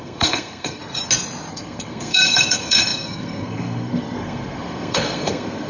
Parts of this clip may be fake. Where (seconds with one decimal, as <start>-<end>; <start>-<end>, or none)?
0.0-0.8; 1.5-5.7